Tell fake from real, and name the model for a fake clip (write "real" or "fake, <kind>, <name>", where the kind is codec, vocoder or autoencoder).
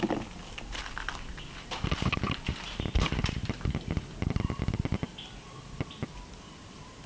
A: real